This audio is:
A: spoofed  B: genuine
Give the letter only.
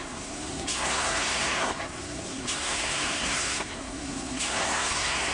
A